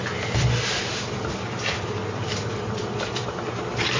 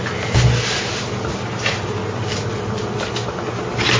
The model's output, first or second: first